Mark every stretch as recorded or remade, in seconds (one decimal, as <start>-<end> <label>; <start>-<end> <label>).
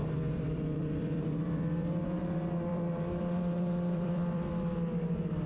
0.0-2.2 remade; 2.2-2.7 recorded; 2.7-4.5 remade; 4.5-5.5 recorded